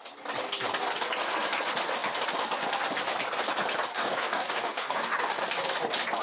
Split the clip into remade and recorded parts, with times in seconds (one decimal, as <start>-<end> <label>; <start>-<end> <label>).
0.0-3.9 recorded; 3.9-5.4 remade; 5.4-6.2 recorded